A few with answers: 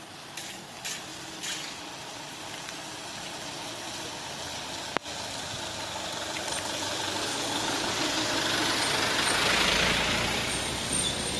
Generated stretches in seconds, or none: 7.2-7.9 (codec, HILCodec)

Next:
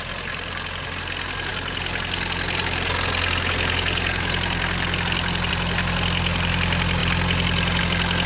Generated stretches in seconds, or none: none